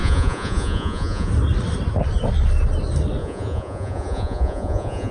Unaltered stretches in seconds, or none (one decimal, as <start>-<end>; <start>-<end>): 1.3-3.2